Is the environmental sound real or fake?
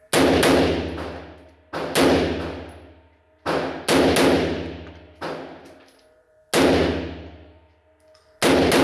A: real